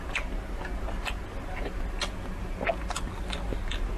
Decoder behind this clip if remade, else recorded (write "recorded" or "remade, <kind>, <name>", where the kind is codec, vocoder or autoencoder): recorded